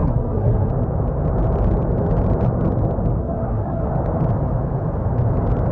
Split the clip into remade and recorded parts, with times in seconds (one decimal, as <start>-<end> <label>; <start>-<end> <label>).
0.0-0.7 remade; 0.7-3.2 recorded; 3.2-3.9 remade; 3.9-5.7 recorded